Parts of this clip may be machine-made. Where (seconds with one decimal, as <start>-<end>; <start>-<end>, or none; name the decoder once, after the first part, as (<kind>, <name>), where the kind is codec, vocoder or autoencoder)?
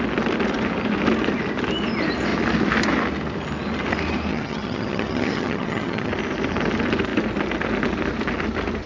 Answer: 4.3-6.1 (vocoder, HiFi-GAN)